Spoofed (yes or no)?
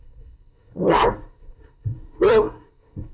yes